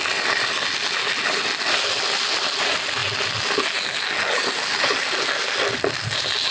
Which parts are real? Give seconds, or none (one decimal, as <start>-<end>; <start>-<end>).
0.0-6.5